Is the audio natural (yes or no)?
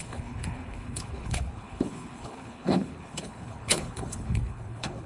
no